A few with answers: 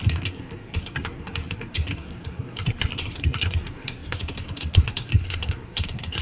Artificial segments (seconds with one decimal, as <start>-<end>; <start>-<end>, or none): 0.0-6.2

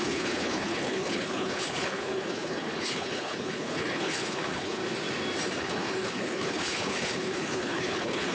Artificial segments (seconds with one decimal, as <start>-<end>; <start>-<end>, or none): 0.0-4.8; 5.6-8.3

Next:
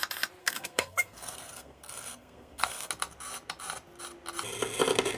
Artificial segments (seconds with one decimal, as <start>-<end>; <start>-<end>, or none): 0.4-2.9

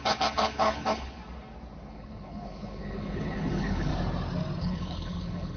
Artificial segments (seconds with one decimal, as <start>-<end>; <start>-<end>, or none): 0.0-1.2; 1.9-3.9; 4.6-5.6